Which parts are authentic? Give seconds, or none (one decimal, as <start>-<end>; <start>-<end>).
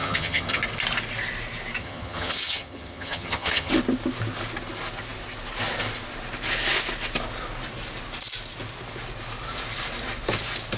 0.6-1.8; 3.7-10.8